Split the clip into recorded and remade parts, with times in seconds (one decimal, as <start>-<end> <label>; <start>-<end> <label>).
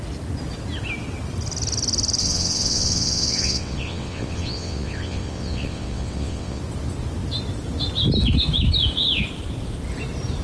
0.0-2.2 recorded; 2.2-6.6 remade; 6.6-10.4 recorded